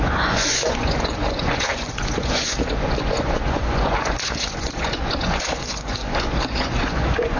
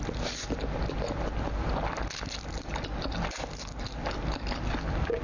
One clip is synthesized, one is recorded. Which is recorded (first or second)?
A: second